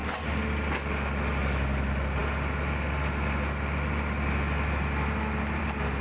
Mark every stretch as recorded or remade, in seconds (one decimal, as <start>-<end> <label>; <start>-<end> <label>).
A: 0.0-6.0 recorded